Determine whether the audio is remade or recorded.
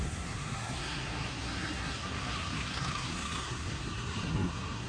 remade